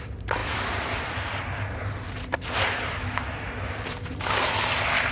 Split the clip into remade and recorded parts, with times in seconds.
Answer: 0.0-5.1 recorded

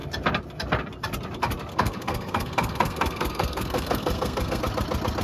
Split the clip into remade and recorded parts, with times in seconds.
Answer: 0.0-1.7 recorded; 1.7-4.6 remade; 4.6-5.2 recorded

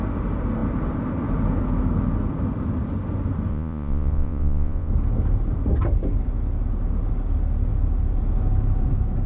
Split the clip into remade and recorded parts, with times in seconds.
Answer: 0.0-3.5 recorded; 3.5-4.9 remade; 4.9-9.3 recorded

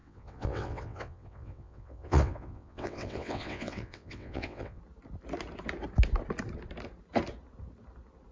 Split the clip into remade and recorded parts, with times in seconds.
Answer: 0.0-4.8 remade; 4.8-8.3 recorded

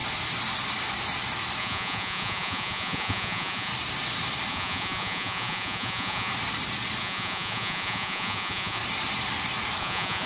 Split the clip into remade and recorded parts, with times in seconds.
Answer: 0.0-1.6 recorded; 1.6-3.7 remade; 3.7-4.5 recorded; 4.5-6.3 remade; 6.3-7.0 recorded; 7.0-8.8 remade; 8.8-9.8 recorded; 9.8-10.3 remade

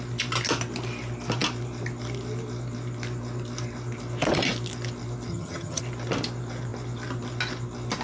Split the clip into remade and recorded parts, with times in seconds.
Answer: 0.0-5.3 recorded; 5.3-5.8 remade; 5.8-8.0 recorded